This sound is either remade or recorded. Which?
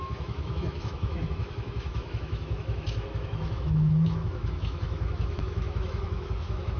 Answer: remade